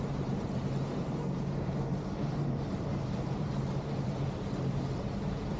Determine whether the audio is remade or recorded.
remade